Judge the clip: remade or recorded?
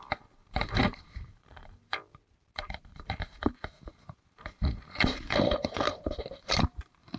remade